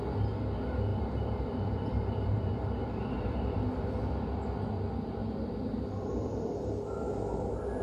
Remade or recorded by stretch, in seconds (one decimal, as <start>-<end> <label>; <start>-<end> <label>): 0.0-0.9 recorded; 0.9-3.7 remade; 3.7-5.2 recorded; 5.2-6.5 remade; 6.5-7.8 recorded